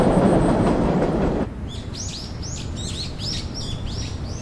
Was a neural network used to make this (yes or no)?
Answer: no